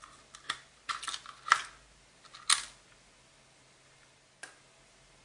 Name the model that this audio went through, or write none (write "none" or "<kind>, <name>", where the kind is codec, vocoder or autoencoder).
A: none